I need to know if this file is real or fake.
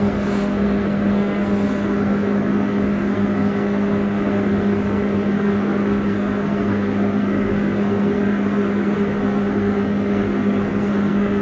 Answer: fake